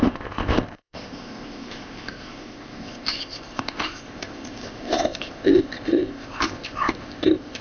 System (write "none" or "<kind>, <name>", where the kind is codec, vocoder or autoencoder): codec, ZipCodec